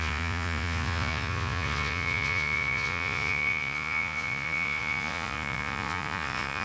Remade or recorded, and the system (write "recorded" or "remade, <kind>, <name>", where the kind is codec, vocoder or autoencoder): remade, vocoder, Vocos